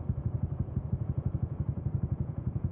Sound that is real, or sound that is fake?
fake